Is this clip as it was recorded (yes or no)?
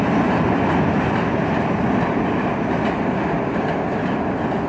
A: yes